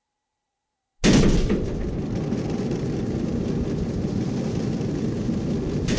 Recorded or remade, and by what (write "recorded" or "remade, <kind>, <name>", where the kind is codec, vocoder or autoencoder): recorded